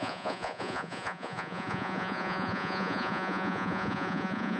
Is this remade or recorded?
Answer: remade